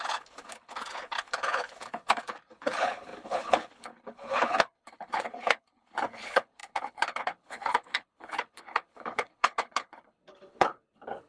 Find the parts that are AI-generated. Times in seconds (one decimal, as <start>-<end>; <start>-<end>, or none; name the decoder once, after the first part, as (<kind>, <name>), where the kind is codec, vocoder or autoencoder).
0.0-11.3 (codec, HILCodec)